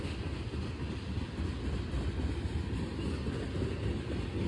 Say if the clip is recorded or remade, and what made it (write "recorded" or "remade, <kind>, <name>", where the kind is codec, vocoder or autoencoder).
recorded